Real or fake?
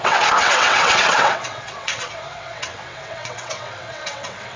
fake